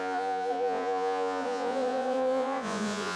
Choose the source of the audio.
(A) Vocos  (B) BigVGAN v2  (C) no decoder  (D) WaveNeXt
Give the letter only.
A